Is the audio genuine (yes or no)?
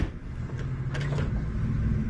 yes